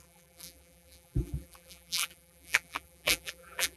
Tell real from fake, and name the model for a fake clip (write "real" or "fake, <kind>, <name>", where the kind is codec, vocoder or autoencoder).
fake, vocoder, BigVGAN v2